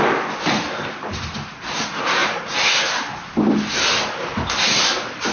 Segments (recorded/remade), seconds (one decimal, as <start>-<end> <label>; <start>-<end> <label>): 0.0-5.3 recorded